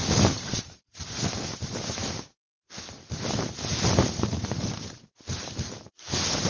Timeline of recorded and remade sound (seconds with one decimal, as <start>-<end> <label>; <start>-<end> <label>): 0.0-6.5 recorded